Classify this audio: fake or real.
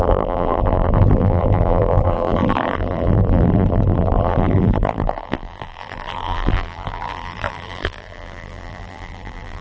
fake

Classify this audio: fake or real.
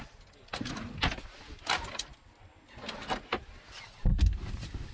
real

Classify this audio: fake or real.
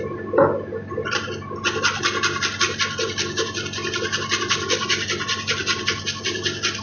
real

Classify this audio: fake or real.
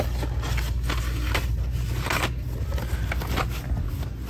real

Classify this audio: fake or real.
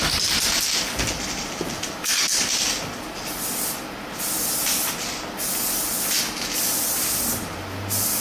real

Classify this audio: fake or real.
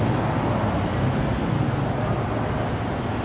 real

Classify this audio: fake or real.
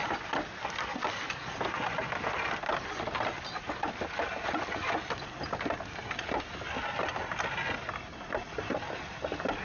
real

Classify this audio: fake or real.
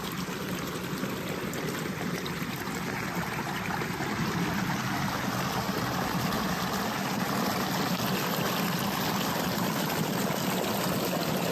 real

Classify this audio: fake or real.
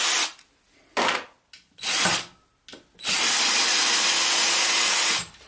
real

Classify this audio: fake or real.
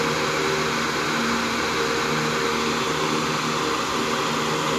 fake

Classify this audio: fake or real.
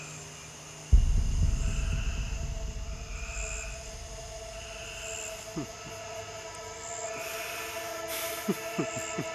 real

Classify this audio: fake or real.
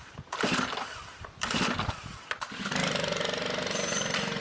real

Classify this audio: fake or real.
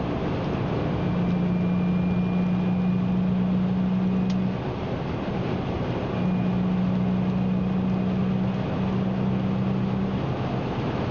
real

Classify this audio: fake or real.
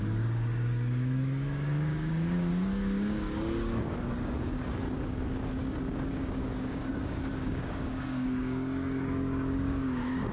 fake